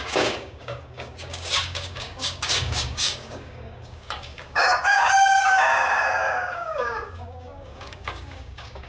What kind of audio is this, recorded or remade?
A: remade